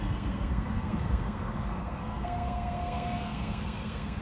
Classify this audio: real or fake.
fake